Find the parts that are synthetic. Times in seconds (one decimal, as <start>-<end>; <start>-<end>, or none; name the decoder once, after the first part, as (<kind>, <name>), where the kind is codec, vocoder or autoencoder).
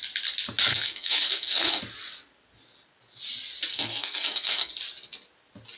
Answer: 0.7-1.8 (codec, SNAC); 3.7-4.7